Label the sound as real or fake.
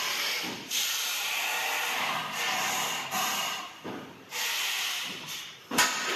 real